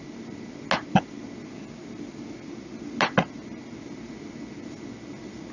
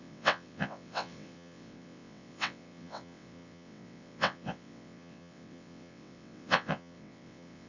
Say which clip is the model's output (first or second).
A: second